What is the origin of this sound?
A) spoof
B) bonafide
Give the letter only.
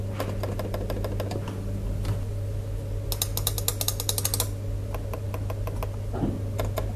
B